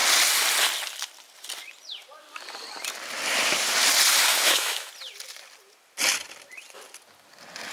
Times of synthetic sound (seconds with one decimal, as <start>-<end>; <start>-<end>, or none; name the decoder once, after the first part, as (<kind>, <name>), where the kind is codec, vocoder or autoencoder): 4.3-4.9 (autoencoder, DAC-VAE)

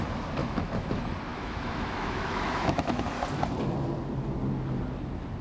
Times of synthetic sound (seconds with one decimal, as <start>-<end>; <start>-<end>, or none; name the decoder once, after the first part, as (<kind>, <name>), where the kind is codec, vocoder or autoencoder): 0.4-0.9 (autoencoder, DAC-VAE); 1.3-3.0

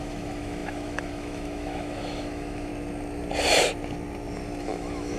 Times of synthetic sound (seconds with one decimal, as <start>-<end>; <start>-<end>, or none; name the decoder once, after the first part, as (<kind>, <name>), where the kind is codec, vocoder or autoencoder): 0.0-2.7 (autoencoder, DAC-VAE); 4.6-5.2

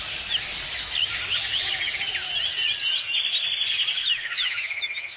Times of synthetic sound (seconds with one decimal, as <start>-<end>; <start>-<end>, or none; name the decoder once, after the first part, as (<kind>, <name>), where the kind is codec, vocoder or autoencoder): 4.0-5.2 (autoencoder, DAC-VAE)